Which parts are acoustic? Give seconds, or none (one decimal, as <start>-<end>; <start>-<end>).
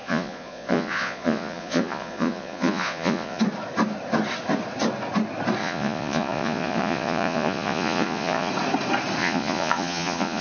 3.4-5.6; 8.5-9.2